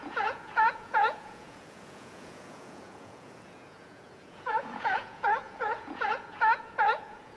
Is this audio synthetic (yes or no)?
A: yes